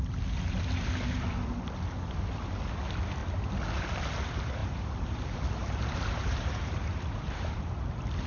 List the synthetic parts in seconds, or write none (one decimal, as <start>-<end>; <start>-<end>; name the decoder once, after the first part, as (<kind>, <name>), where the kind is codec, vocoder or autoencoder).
4.6-7.9 (vocoder, BigVGAN v2)